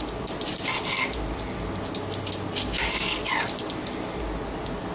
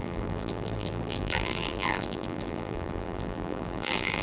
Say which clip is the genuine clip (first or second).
first